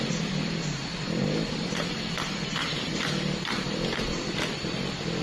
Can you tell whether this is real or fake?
real